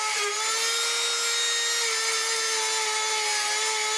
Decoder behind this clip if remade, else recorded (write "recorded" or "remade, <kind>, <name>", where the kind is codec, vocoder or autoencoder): recorded